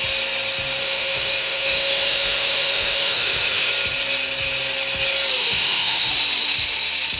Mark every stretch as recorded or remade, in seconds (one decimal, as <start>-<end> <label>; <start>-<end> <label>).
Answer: 0.0-0.8 recorded; 0.8-3.7 remade; 3.7-5.4 recorded; 5.4-6.1 remade; 6.1-7.2 recorded